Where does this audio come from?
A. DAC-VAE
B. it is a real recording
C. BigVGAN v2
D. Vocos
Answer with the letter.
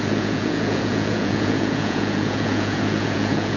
D